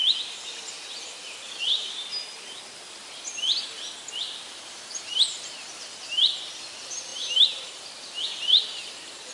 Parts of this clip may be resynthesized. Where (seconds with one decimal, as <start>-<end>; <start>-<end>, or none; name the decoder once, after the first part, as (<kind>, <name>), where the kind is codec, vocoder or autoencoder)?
none